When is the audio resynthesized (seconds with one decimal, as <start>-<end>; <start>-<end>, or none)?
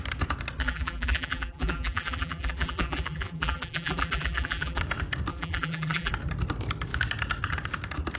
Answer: 0.6-4.8; 5.3-6.1